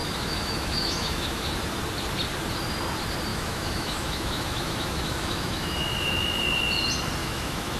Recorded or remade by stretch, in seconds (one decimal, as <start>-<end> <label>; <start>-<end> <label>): 0.0-1.5 remade; 1.5-3.3 recorded; 3.3-6.4 remade; 6.4-7.2 recorded; 7.2-7.8 remade